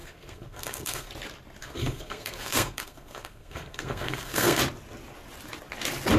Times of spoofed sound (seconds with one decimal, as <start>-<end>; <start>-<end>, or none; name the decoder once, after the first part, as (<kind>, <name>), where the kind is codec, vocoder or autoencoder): 0.0-1.1 (codec, SNAC); 1.6-4.6